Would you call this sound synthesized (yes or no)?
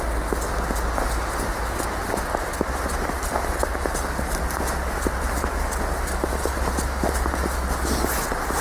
no